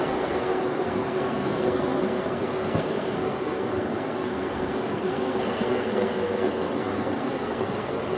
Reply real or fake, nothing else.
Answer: fake